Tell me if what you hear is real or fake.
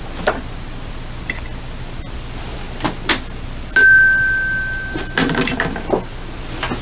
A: real